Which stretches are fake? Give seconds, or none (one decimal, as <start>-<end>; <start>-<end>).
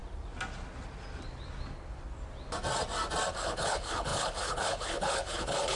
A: 3.3-5.8